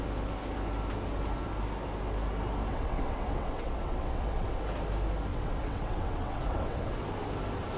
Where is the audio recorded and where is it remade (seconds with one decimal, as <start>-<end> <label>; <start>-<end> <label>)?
0.0-2.7 recorded; 2.7-4.6 remade; 4.6-5.3 recorded; 5.3-7.0 remade; 7.0-7.8 recorded